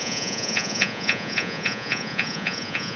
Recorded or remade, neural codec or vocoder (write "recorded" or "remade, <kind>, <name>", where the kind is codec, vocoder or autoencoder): remade, vocoder, Vocos